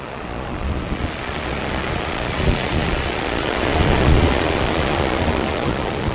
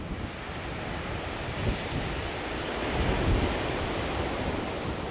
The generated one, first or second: first